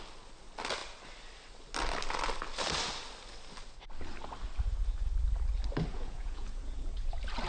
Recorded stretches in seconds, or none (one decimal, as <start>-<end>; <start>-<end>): 0.0-5.9; 7.1-7.5